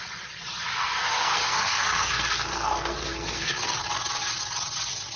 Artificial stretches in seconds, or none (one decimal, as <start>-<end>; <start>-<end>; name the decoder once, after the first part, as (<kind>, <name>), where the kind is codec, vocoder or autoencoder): 0.7-3.8 (codec, SNAC)

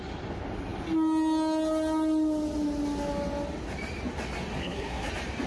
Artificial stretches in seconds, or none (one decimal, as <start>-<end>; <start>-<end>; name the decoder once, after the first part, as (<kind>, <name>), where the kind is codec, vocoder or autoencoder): 4.6-5.1 (codec, SNAC)

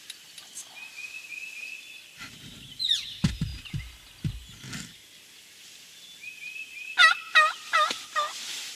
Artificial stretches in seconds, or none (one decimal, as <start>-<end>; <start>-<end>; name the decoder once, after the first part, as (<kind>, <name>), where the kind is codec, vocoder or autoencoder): none

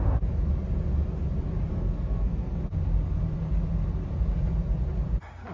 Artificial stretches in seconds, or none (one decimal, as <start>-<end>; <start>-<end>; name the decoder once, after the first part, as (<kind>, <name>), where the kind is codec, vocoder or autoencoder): 1.7-2.6 (codec, SNAC)

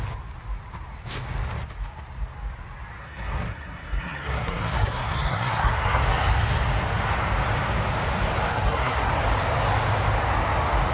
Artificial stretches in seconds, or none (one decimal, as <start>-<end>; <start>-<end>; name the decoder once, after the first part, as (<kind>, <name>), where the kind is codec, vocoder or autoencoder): 3.0-6.0 (codec, SNAC); 8.5-9.1

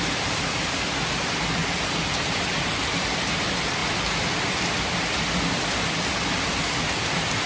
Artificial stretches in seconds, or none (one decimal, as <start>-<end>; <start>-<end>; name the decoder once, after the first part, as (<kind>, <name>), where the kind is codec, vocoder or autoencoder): none